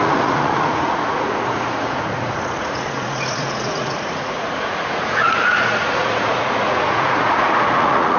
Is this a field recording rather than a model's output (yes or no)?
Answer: no